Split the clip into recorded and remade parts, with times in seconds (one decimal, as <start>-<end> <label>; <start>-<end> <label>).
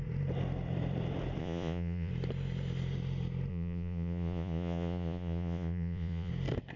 0.0-1.4 recorded; 1.4-2.1 remade; 2.1-3.5 recorded; 3.5-6.3 remade; 6.3-6.8 recorded